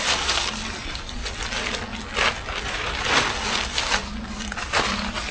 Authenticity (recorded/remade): recorded